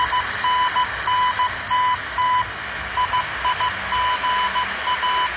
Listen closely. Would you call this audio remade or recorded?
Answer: recorded